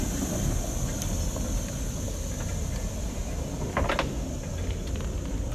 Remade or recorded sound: recorded